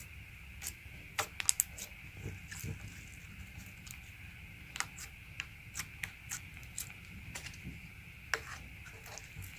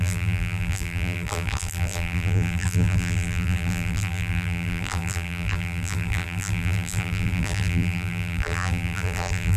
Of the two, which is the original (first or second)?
first